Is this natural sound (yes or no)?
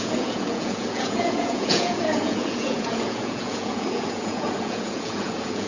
no